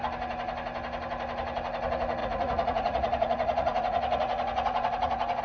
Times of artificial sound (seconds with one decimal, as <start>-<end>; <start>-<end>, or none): 2.2-5.4

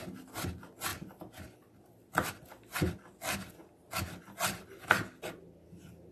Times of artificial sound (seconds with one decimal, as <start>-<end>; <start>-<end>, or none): none

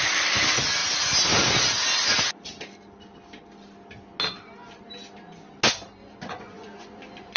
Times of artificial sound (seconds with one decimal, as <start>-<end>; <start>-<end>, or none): 6.0-7.4

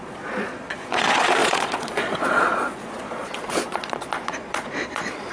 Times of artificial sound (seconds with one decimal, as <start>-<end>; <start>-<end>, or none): 0.0-5.3

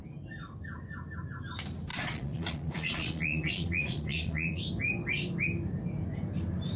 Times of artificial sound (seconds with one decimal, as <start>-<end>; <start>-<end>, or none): 1.9-4.6

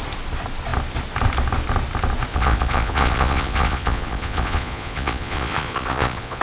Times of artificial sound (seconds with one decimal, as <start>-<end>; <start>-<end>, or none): 2.3-6.4

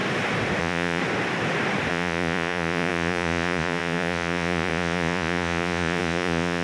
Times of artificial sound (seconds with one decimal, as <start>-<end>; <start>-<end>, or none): 0.6-1.0; 1.9-6.6

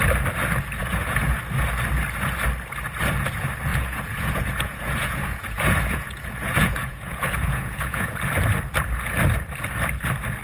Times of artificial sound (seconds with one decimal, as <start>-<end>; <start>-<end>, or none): 0.8-1.4; 3.7-8.2